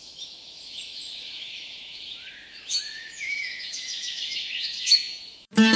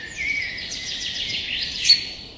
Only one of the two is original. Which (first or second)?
second